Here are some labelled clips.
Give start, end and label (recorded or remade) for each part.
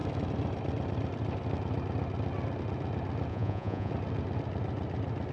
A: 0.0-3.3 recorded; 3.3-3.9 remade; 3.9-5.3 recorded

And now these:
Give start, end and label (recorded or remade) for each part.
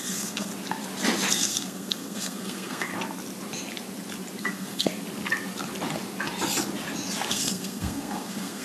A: 0.0-0.5 remade; 0.5-1.3 recorded; 1.3-2.9 remade; 2.9-4.4 recorded; 4.4-4.9 remade; 4.9-7.3 recorded; 7.3-8.6 remade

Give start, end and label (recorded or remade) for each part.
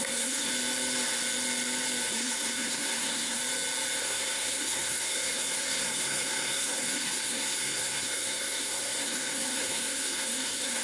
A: 0.0-0.5 remade; 0.5-2.1 recorded; 2.1-3.4 remade; 3.4-4.0 recorded; 4.0-10.8 remade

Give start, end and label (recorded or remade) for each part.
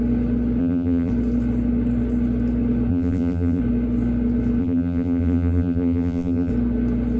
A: 0.0-0.6 recorded; 0.6-1.1 remade; 1.1-2.9 recorded; 2.9-3.6 remade; 3.6-4.6 recorded; 4.6-6.5 remade; 6.5-7.2 recorded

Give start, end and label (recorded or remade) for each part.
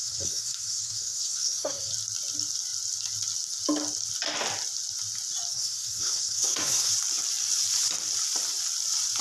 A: 0.0-1.9 remade; 1.9-5.5 recorded; 5.5-6.9 remade; 6.9-9.2 recorded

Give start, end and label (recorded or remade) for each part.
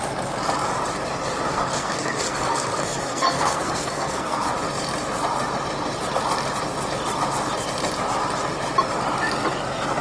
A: 0.0-1.5 recorded; 1.5-4.5 remade; 4.5-10.0 recorded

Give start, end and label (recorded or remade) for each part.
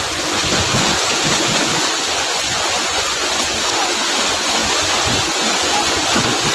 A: 0.0-6.5 remade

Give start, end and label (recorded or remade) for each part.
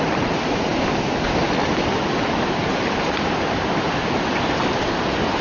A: 0.0-0.7 remade; 0.7-3.9 recorded; 3.9-5.4 remade